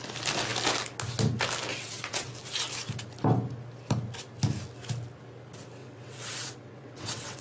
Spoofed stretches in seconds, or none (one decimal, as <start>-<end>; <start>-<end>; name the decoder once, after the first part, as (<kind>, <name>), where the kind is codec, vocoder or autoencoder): 1.7-2.3 (vocoder, WaveNeXt); 5.8-7.4